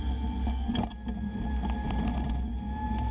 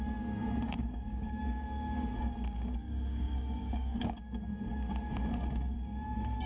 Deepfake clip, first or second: second